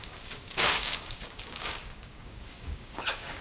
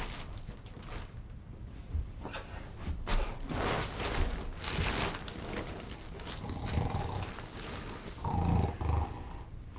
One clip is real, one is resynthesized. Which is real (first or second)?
second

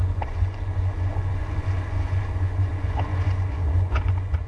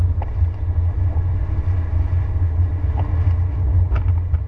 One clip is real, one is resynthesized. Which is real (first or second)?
second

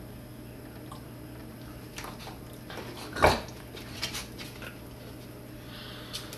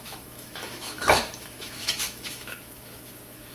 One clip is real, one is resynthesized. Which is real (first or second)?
first